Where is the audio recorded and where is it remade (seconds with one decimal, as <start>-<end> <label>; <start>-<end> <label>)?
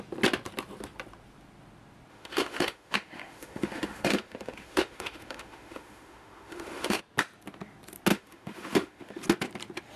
0.0-2.1 recorded; 2.1-7.0 remade; 7.0-8.1 recorded; 8.1-9.2 remade; 9.2-10.0 recorded